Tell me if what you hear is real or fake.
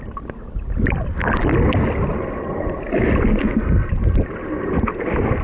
real